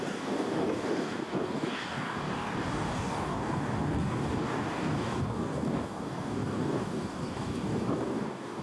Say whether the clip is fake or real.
fake